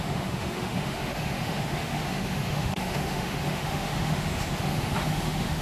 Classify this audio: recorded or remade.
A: remade